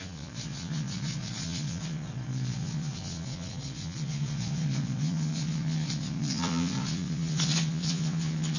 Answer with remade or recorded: remade